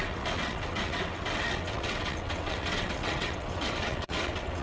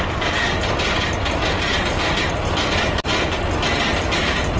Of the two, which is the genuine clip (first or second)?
second